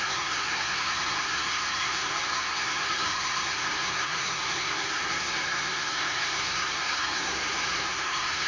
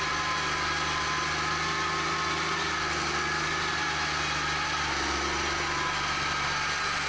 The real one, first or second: second